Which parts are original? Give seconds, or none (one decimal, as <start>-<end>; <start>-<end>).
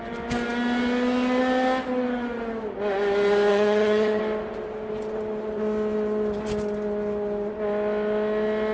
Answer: 0.0-3.5; 4.2-8.7